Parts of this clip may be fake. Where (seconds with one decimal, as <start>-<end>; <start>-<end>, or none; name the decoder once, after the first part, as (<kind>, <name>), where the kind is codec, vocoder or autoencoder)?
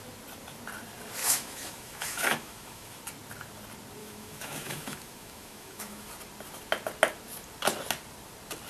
1.2-3.0 (autoencoder, DAC-VAE); 4.0-6.1